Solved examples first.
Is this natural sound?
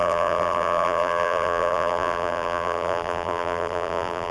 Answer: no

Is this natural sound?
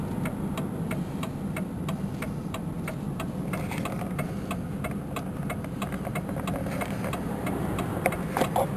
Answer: yes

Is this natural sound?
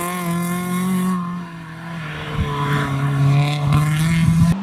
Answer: yes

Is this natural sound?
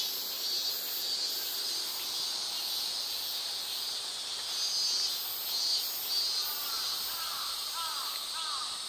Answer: yes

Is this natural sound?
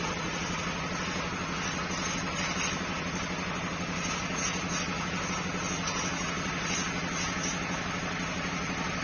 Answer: yes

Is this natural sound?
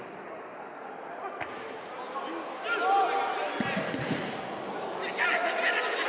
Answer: yes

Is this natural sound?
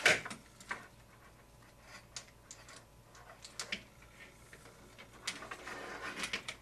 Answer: yes